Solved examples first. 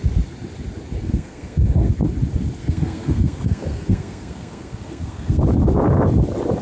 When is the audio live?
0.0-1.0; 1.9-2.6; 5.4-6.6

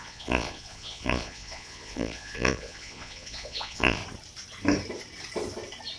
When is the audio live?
4.0-6.0

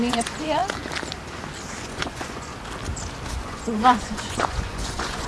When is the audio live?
0.6-1.8; 2.5-3.3